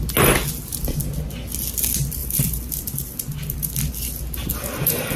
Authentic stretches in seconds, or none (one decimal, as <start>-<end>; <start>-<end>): 0.0-2.2